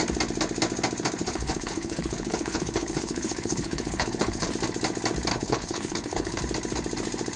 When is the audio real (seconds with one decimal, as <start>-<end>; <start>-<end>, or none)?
0.0-1.2; 4.5-5.3; 6.4-7.4